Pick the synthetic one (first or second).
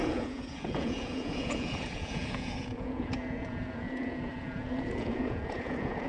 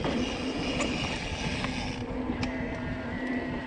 first